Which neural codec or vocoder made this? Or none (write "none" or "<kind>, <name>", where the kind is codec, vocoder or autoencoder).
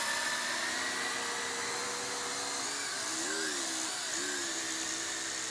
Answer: none